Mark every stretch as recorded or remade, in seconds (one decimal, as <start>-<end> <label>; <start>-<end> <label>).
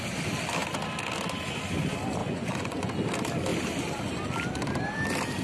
0.0-2.2 recorded; 2.2-2.9 remade; 2.9-5.4 recorded